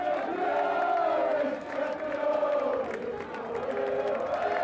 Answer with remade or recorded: recorded